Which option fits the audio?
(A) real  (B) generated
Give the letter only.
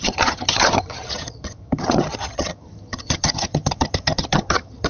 B